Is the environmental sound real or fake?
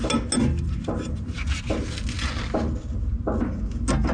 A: real